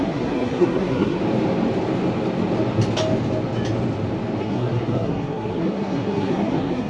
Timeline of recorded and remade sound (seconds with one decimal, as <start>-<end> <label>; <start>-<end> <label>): 0.0-1.2 remade; 1.2-4.4 recorded; 4.4-6.9 remade